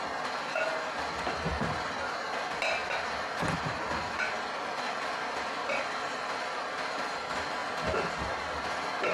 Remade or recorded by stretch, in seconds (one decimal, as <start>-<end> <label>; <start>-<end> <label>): 0.0-9.1 recorded